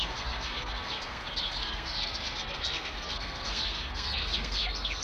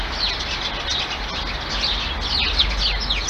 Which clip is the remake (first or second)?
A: first